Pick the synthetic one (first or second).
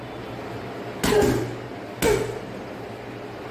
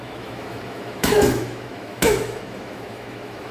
second